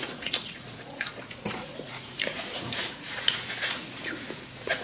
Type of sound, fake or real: fake